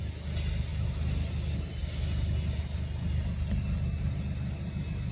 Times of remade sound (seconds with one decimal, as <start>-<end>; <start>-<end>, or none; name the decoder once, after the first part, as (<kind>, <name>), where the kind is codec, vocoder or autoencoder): none